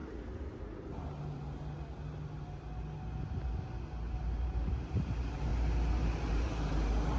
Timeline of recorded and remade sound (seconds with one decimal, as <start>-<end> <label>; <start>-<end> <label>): 0.0-4.3 recorded; 4.3-5.5 remade; 5.5-6.3 recorded; 6.3-7.2 remade